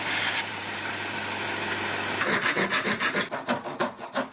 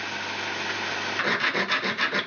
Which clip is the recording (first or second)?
second